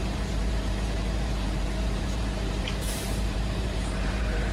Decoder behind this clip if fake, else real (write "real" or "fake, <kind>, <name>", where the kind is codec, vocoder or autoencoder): fake, vocoder, BigVGAN v2